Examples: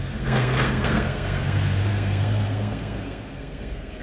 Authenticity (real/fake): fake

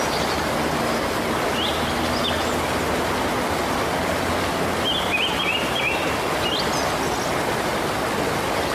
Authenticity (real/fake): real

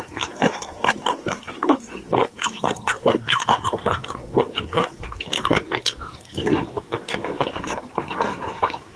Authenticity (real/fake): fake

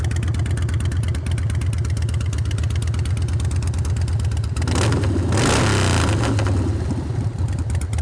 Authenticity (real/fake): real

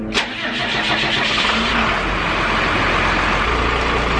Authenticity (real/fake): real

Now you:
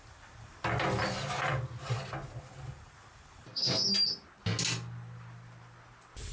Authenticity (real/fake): real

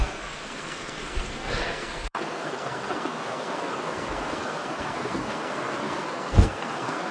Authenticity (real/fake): fake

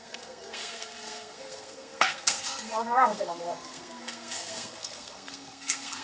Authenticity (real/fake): fake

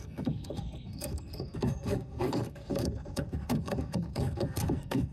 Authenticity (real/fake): fake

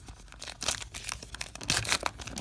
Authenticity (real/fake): real